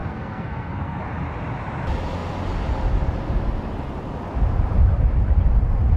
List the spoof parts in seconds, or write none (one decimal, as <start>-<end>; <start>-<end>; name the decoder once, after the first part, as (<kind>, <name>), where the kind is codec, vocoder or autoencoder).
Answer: 0.0-1.0 (codec, SNAC)